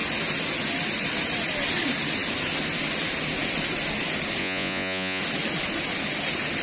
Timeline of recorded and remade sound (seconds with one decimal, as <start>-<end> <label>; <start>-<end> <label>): 0.0-4.4 recorded; 4.4-5.2 remade; 5.2-6.6 recorded